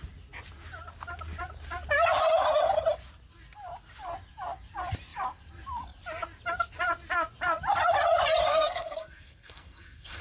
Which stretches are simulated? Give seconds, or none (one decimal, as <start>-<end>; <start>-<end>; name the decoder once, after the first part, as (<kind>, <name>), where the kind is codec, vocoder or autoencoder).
8.5-10.2 (codec, SNAC)